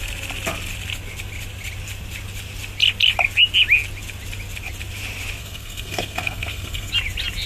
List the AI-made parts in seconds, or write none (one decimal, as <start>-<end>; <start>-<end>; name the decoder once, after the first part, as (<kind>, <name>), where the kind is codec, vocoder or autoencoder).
5.4-6.9 (codec, SNAC)